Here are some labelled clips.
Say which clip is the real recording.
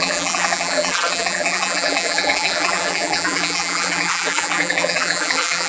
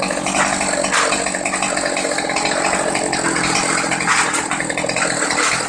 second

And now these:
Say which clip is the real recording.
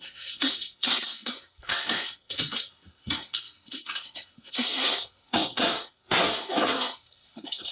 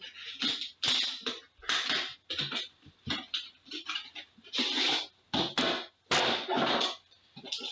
second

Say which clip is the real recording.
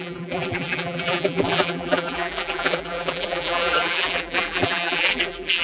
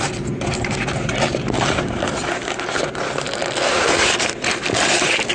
second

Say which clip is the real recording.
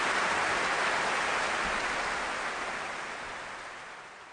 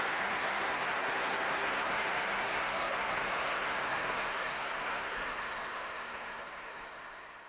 first